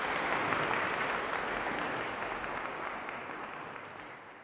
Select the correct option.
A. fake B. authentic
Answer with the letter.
B